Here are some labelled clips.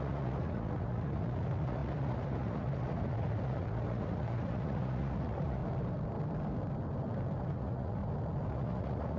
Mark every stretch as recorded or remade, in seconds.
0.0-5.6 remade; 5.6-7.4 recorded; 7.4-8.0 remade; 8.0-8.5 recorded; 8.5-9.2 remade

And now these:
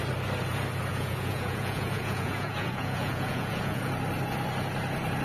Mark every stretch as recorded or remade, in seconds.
0.0-0.9 recorded; 0.9-3.8 remade; 3.8-5.2 recorded

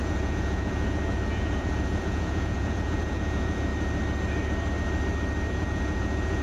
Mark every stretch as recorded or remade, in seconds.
0.0-3.7 remade; 3.7-5.5 recorded; 5.5-6.4 remade